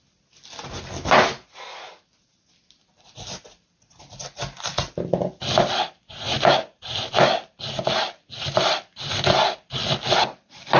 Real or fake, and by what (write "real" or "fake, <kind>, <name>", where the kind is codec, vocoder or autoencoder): real